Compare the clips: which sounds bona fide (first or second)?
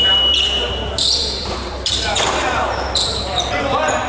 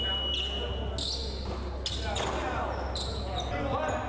second